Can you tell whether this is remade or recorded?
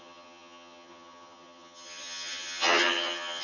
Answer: remade